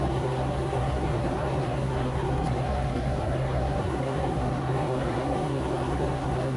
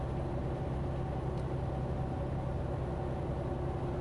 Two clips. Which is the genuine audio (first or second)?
second